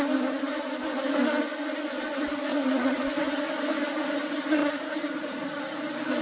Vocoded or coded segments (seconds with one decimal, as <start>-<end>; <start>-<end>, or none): 2.5-3.1; 4.6-5.6